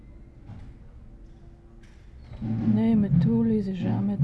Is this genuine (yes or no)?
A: yes